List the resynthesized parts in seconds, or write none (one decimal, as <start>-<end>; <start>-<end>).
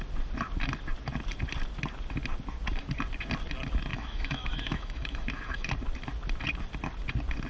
3.9-5.7